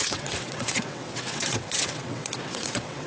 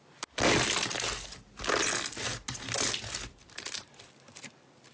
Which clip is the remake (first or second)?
first